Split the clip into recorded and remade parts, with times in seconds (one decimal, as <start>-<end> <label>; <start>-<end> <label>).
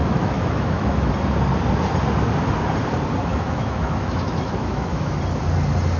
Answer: 0.0-1.1 remade; 1.1-3.3 recorded; 3.3-5.2 remade; 5.2-6.0 recorded